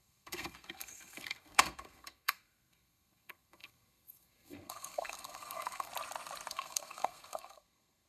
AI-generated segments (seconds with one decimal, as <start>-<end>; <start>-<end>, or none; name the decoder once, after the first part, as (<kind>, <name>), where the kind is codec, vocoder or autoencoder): 0.0-5.9 (codec, SNAC); 6.5-8.1